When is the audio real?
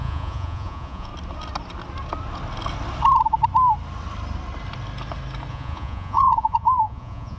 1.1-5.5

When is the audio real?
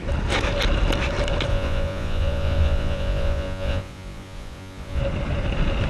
0.0-1.5; 5.0-5.9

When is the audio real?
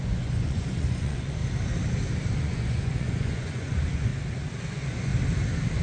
1.4-2.4; 4.1-4.6; 5.1-5.8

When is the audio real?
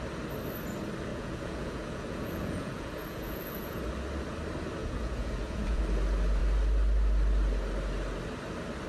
0.0-1.1; 3.8-4.8; 5.8-8.9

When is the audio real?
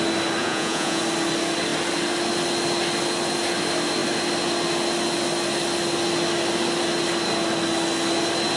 0.0-0.4; 1.0-8.6